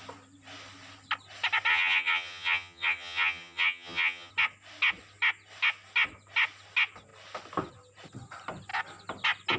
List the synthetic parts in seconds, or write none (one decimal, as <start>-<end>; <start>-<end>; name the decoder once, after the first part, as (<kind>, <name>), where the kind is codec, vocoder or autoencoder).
1.7-4.3 (vocoder, HiFi-GAN)